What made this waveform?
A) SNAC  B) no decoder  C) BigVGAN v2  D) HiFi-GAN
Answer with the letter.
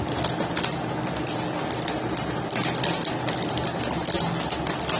B